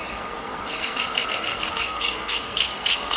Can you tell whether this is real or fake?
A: fake